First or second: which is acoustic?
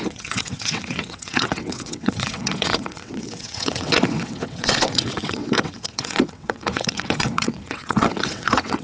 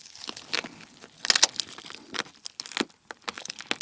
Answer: second